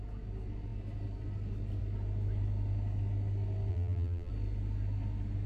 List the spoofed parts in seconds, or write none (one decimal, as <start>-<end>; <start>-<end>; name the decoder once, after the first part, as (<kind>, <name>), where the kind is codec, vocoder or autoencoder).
3.7-4.3 (vocoder, BigVGAN v2)